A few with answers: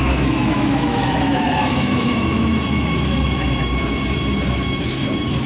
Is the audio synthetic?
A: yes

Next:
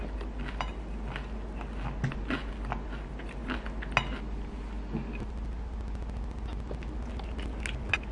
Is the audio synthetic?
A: no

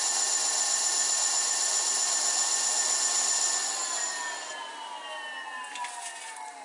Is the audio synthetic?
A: no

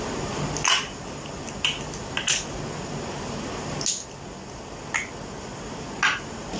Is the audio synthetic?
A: no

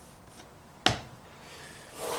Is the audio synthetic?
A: no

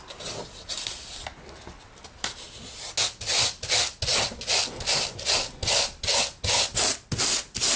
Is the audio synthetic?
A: no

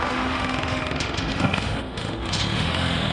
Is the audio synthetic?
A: yes